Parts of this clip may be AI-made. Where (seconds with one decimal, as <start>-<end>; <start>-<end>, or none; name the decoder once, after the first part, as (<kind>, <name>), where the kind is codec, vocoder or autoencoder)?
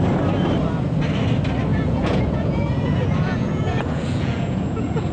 1.7-5.1 (vocoder, Vocos)